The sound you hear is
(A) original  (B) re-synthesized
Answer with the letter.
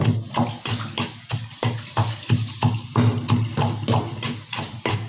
A